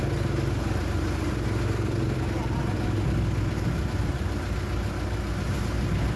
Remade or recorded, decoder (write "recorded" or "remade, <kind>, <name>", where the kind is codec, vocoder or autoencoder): recorded